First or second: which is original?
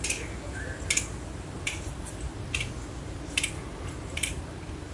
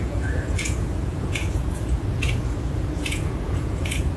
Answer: first